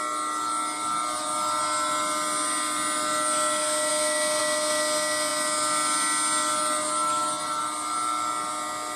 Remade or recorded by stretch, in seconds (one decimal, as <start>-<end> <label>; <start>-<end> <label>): 0.0-9.0 recorded

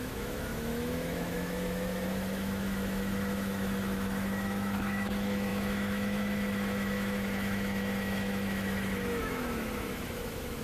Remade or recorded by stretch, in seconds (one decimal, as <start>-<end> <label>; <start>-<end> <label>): 0.0-10.6 remade

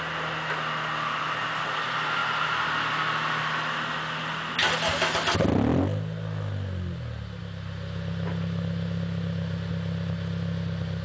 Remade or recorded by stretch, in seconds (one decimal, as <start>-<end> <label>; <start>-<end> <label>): 0.0-11.0 recorded

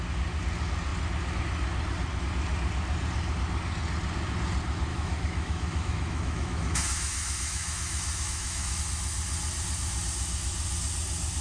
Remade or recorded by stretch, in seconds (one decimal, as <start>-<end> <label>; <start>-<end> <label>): 0.0-4.9 recorded; 4.9-8.8 remade; 8.8-11.4 recorded